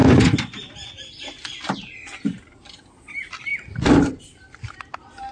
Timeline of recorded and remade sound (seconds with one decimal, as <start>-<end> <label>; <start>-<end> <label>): 0.0-3.5 recorded; 3.5-5.3 remade